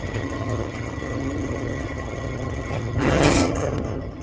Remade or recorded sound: remade